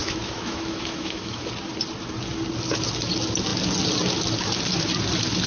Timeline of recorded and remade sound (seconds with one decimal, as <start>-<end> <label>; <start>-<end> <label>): 0.0-1.5 remade; 1.5-5.5 recorded